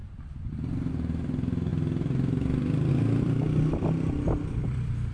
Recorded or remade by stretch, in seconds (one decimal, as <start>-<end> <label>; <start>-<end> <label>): 0.0-0.9 remade; 0.9-5.1 recorded